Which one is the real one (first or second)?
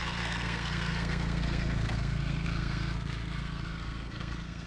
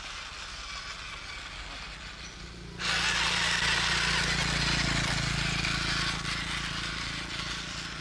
second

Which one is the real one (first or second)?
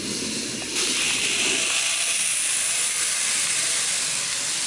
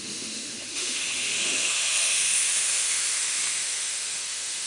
first